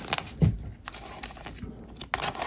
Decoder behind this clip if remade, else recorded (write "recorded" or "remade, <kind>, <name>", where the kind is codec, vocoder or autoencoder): recorded